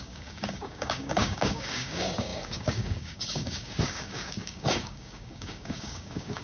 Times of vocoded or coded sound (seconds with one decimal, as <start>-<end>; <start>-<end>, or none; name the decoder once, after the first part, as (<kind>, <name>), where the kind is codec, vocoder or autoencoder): 0.0-6.4 (codec, DAC)